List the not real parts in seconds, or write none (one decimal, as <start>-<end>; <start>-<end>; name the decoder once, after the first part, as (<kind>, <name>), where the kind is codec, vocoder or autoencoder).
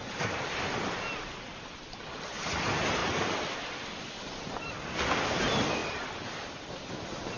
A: none